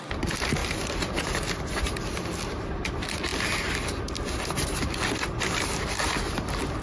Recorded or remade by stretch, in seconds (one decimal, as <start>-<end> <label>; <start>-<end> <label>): 0.0-0.6 remade; 0.6-1.7 recorded; 1.7-3.3 remade; 3.3-5.8 recorded; 5.8-6.8 remade